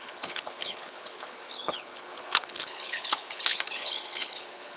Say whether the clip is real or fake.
fake